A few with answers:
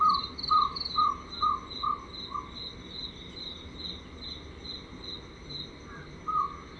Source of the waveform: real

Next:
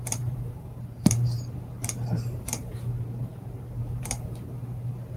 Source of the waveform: fake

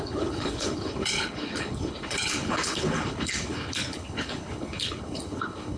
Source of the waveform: fake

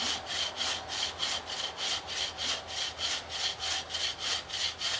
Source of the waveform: real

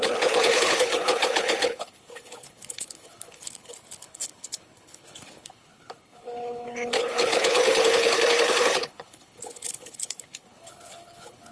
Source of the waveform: fake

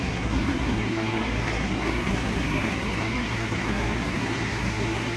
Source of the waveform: fake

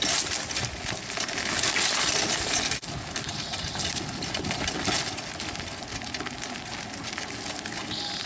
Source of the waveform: real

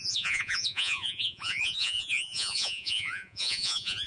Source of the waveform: fake